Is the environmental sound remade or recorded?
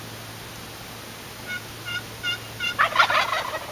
recorded